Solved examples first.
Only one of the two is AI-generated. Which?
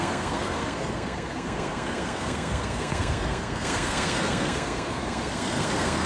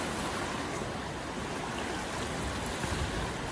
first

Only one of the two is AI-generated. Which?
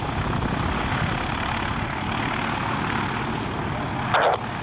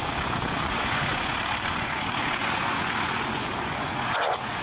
second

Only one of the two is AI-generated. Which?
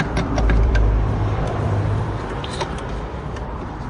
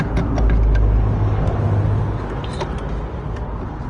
first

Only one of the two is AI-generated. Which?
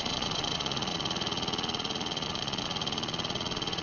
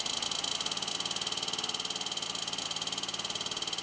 first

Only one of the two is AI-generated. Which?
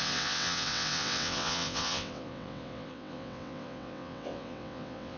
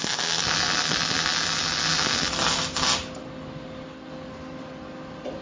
first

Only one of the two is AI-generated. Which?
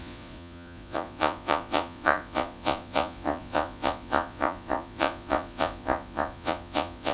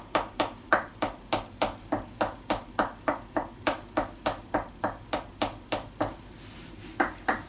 first